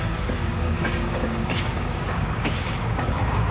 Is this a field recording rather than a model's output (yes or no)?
no